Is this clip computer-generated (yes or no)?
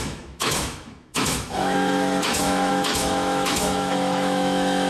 yes